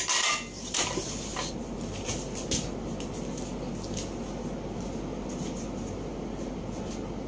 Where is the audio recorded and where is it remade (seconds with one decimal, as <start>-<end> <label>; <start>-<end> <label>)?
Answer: 0.0-7.3 recorded